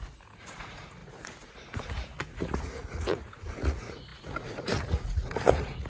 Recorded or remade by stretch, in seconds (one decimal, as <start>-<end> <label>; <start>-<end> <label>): 0.0-5.9 remade